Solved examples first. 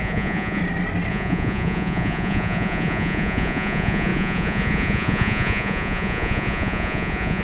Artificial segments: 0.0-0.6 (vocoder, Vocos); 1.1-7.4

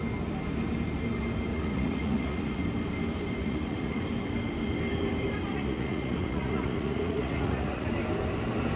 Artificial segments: 1.5-2.6 (vocoder, Vocos); 3.4-4.0; 5.5-7.9

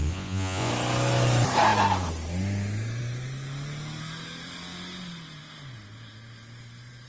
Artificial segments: 0.0-0.7 (vocoder, Vocos)